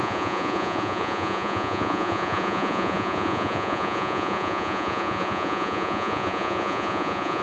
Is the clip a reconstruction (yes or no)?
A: yes